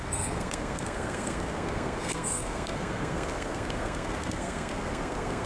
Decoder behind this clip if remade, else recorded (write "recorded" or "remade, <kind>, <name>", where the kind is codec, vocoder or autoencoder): remade, codec, SNAC